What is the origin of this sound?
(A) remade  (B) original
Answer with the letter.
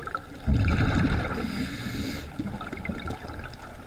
B